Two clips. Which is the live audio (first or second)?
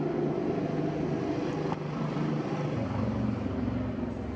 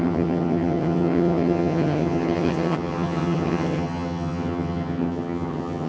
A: first